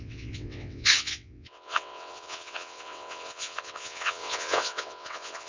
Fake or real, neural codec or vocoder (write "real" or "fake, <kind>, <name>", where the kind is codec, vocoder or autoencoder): fake, vocoder, WaveNeXt